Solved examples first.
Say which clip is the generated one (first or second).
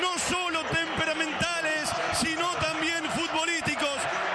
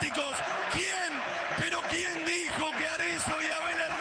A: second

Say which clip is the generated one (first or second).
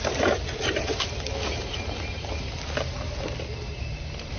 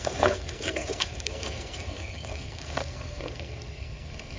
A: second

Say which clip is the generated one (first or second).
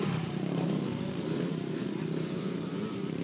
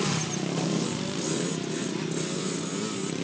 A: first